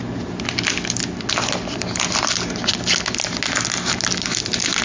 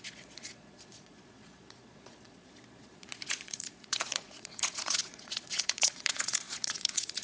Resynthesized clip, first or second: second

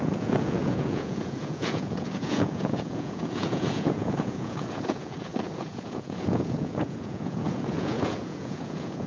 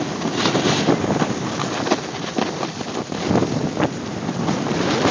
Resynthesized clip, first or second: first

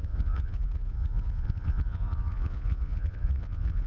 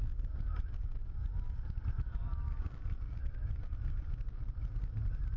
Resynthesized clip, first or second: first